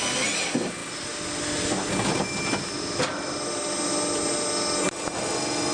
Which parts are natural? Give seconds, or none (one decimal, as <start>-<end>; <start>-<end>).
0.0-5.7